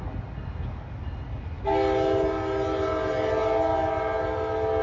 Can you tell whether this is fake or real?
real